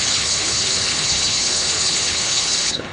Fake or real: fake